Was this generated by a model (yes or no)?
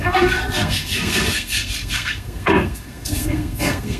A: yes